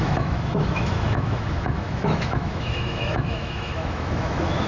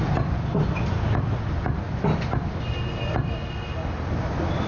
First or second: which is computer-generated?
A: first